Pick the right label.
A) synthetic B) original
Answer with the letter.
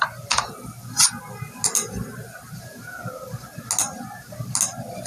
B